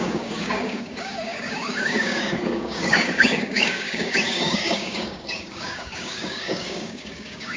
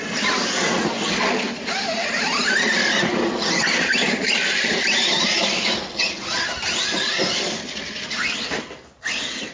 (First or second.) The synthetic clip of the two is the first